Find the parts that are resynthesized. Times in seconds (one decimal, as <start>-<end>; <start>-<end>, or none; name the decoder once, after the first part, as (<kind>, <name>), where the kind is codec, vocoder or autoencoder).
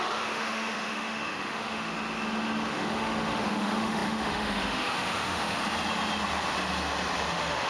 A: 0.0-1.9 (autoencoder, DAC-VAE); 2.7-5.6; 7.3-7.7